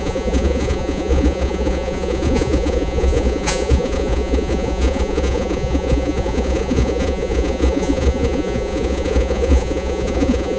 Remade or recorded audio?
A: remade